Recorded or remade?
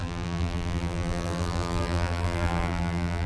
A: remade